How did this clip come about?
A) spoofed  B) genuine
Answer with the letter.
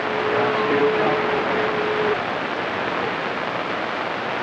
A